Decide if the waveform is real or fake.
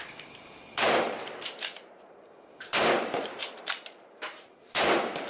fake